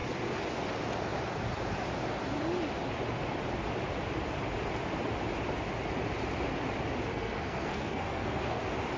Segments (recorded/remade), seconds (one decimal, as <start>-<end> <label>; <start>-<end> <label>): 0.0-7.1 recorded; 7.1-8.6 remade; 8.6-9.0 recorded